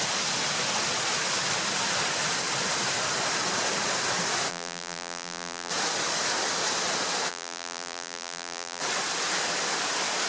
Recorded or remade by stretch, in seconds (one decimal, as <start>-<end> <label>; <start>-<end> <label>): 0.0-4.5 recorded; 4.5-5.7 remade; 5.7-7.3 recorded; 7.3-8.8 remade; 8.8-10.3 recorded